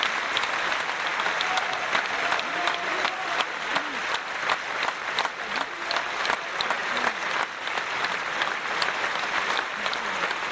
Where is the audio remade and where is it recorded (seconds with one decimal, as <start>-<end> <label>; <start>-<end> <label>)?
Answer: 0.0-10.5 recorded